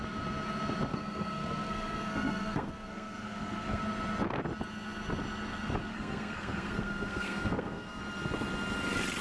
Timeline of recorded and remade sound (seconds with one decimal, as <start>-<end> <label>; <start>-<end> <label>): 0.0-0.9 recorded; 0.9-3.8 remade; 3.8-5.9 recorded; 5.9-8.0 remade; 8.0-9.2 recorded